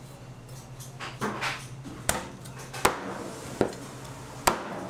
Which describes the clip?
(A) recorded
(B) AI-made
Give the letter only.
A